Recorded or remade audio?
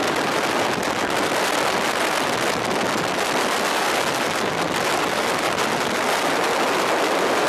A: recorded